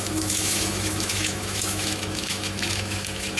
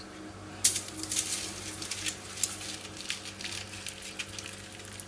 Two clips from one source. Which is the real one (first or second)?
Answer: second